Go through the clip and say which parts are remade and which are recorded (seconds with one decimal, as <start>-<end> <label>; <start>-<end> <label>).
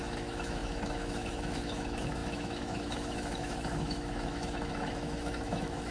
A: 0.0-5.9 remade